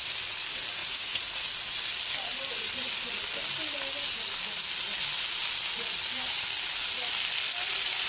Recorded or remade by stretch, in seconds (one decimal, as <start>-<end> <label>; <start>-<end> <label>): 0.0-0.8 recorded; 0.8-1.4 remade; 1.4-8.1 recorded